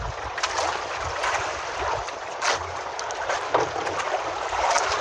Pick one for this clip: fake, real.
real